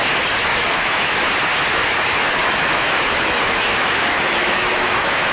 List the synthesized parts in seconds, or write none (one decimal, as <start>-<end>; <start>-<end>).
0.5-1.2; 1.7-5.3